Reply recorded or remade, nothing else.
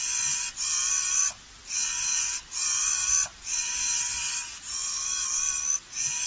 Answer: recorded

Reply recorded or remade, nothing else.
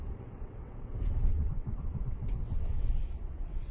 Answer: remade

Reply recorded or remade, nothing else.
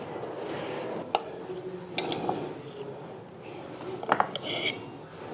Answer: recorded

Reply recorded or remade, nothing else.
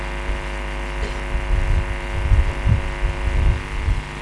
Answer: recorded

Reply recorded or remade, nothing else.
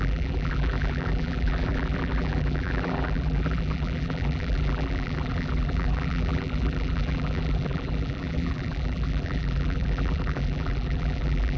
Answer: remade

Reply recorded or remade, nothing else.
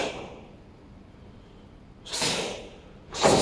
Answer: recorded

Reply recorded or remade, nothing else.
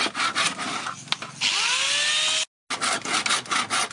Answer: recorded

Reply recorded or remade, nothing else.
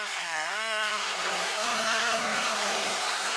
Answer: remade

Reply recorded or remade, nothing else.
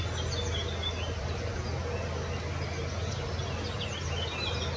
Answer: recorded